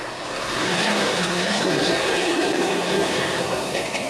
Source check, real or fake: fake